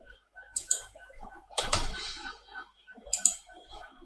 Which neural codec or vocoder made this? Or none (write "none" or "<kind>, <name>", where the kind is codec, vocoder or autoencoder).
autoencoder, DAC-VAE